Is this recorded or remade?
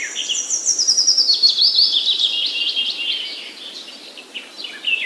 recorded